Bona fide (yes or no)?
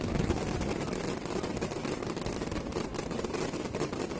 yes